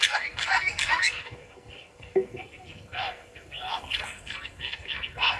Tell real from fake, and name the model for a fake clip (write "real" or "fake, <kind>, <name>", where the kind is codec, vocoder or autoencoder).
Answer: fake, codec, SNAC